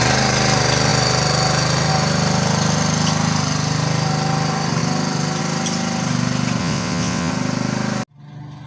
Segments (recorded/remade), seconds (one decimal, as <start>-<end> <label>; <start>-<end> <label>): 0.0-6.6 recorded; 6.6-7.3 remade; 7.3-8.7 recorded